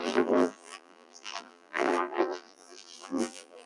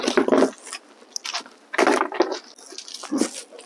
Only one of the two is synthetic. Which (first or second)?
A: first